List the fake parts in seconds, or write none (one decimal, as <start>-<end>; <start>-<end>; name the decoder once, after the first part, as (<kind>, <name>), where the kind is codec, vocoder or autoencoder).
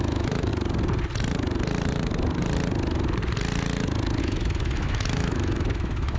0.0-0.5 (autoencoder, DAC-VAE); 4.2-6.2